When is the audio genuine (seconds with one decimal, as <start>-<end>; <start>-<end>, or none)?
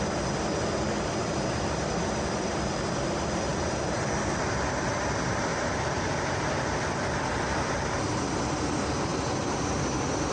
0.0-5.5; 6.4-9.1; 9.9-10.3